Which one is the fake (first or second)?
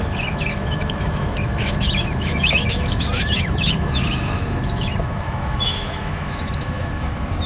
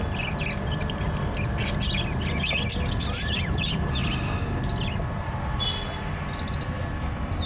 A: first